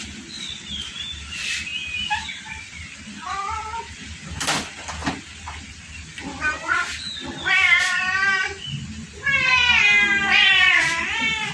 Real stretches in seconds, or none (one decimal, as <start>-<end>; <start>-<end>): 5.0-5.5; 8.5-9.4